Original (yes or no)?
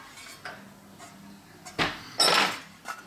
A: yes